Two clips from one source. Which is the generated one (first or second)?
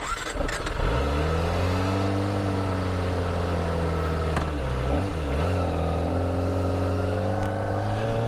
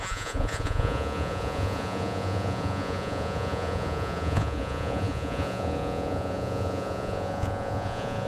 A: second